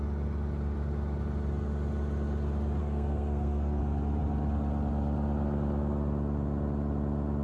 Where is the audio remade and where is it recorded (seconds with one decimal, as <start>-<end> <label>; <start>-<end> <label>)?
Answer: 0.0-2.8 recorded; 2.8-3.8 remade; 3.8-7.4 recorded